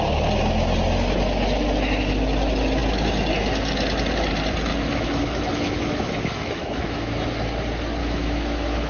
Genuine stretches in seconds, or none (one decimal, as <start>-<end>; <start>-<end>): 0.0-4.7; 7.1-8.0